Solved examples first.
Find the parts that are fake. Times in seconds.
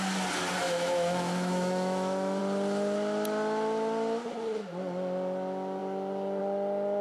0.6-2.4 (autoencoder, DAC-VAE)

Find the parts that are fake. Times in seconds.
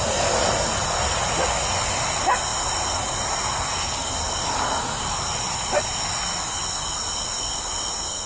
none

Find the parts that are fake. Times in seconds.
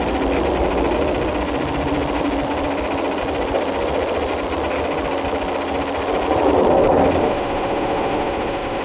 7.2-8.8 (autoencoder, DAC-VAE)